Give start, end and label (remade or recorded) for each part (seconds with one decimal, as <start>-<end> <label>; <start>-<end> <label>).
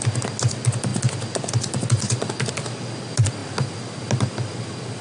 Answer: 0.0-5.0 recorded